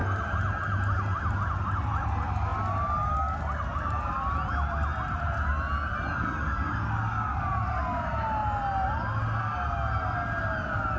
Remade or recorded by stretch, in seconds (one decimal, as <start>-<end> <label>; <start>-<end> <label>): 0.0-11.0 recorded